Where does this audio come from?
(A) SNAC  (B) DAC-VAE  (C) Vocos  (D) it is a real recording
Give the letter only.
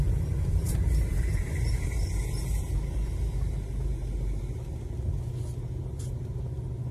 D